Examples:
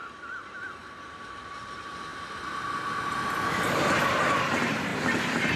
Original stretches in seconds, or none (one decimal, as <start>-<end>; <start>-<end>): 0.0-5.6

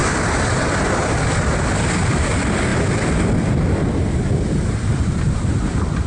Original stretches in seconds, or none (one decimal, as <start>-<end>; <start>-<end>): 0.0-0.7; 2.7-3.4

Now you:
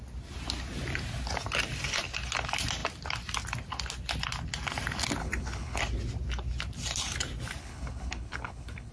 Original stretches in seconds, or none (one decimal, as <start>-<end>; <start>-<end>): 0.0-5.2; 5.8-7.6

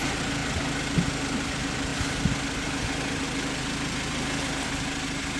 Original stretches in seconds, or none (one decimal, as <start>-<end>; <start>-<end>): 0.0-5.4

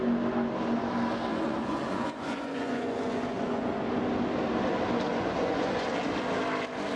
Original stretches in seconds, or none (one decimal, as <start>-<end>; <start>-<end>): 0.0-1.3; 3.8-5.1; 5.9-7.0

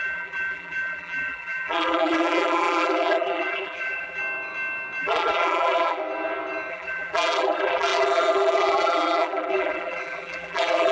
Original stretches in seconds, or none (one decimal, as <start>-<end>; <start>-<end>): 4.2-5.0; 6.0-6.7

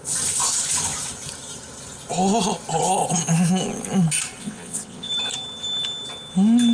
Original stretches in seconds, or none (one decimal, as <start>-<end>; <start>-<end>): 0.0-4.4; 5.1-6.7